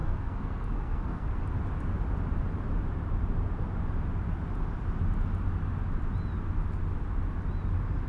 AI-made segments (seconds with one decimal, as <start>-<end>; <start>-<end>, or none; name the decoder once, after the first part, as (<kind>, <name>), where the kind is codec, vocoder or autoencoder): 0.0-1.4 (codec, SNAC)